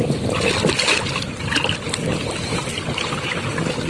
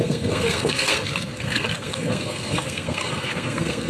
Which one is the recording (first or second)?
first